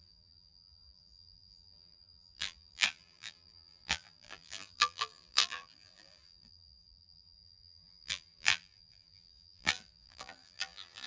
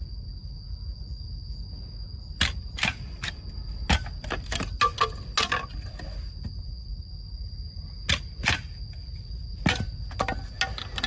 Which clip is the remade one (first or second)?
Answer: first